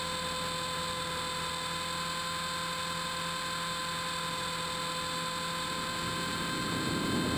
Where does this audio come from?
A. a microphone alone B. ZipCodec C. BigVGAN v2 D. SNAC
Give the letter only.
A